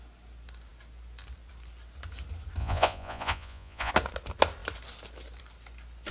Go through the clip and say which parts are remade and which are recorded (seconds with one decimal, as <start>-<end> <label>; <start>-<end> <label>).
0.0-2.6 recorded; 2.6-3.9 remade; 3.9-6.1 recorded